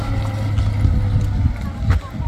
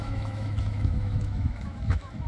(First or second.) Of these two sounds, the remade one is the second